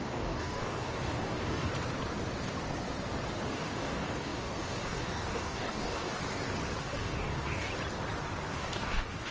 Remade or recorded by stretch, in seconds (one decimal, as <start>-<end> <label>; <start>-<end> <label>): 0.0-1.7 remade; 1.7-3.5 recorded; 3.5-6.2 remade; 6.2-6.8 recorded; 6.8-7.7 remade; 7.7-8.5 recorded; 8.5-9.3 remade